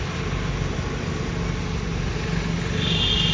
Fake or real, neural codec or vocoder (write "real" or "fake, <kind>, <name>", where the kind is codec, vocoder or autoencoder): real